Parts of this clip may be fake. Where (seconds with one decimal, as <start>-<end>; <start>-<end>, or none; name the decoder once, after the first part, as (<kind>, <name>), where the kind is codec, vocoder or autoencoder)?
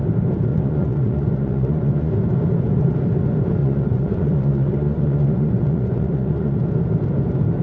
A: 0.5-2.1 (vocoder, Vocos); 3.6-6.6